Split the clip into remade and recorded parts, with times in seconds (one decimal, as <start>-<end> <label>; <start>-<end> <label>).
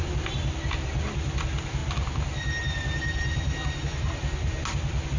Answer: 0.0-5.2 recorded